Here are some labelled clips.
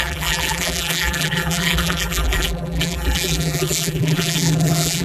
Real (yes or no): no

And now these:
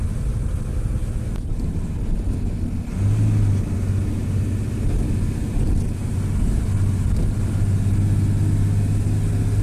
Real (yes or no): yes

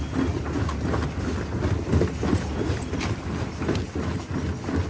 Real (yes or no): yes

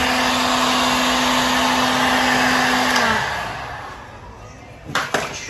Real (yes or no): yes